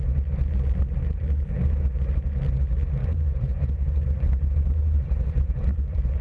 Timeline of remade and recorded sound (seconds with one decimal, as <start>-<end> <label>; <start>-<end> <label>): 0.0-1.0 recorded; 1.0-1.7 remade; 1.7-3.0 recorded; 3.0-6.2 remade